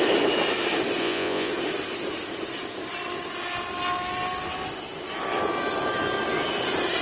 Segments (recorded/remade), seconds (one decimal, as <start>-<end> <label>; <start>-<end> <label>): 0.0-1.0 recorded; 1.0-1.5 remade; 1.5-7.0 recorded